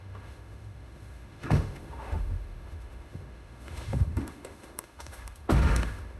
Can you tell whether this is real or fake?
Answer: fake